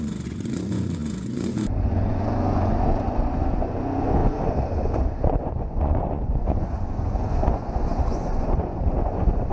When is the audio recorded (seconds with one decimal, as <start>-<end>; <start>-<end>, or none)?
none

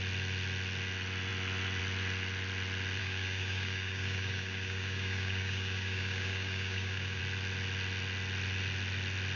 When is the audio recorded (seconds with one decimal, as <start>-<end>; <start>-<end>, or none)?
0.0-3.0; 7.2-9.4

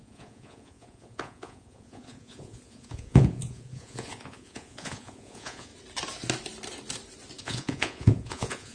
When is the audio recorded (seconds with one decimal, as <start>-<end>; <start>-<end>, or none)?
5.7-7.4

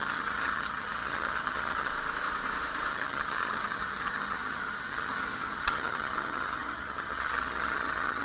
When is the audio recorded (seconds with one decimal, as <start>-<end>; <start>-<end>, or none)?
1.9-2.9

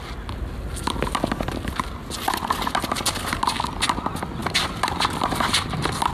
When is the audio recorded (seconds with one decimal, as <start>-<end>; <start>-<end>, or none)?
0.0-4.4

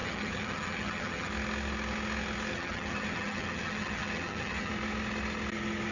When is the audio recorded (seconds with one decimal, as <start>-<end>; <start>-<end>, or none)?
1.3-2.5; 4.7-5.9

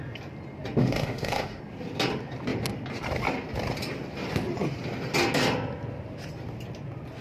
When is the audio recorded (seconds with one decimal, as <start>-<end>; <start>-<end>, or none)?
0.0-0.8; 1.6-7.2

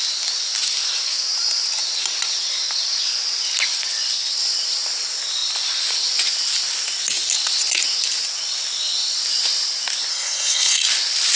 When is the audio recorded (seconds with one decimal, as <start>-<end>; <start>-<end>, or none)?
0.0-10.1; 10.8-11.3